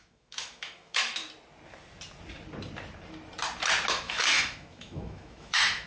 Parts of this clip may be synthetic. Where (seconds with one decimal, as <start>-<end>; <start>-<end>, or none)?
0.0-1.2; 3.9-5.9